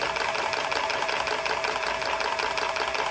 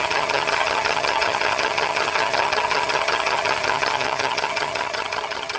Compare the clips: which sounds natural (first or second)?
first